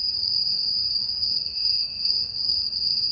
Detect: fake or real fake